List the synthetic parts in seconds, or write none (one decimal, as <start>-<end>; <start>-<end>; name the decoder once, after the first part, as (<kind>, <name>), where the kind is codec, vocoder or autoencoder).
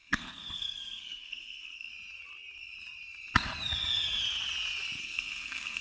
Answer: 0.0-1.9 (codec, SNAC); 5.0-5.8